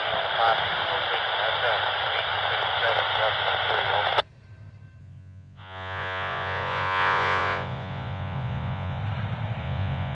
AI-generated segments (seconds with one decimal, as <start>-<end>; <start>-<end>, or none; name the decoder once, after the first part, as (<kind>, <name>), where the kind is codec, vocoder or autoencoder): 5.0-9.0 (vocoder, Vocos); 9.6-10.1